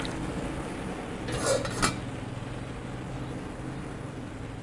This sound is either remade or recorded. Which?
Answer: recorded